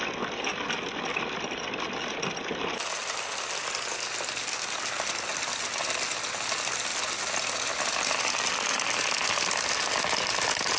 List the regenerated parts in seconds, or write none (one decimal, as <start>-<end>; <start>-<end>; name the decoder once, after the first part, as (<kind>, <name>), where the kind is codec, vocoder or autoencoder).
none